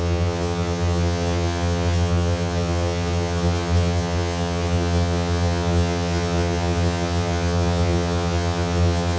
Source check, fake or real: fake